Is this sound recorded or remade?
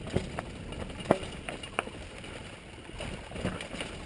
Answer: recorded